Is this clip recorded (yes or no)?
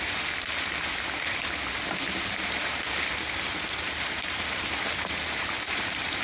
no